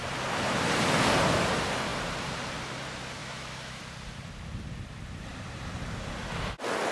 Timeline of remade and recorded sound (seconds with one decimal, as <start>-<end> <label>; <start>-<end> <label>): 0.0-3.2 recorded; 3.2-3.8 remade; 3.8-6.9 recorded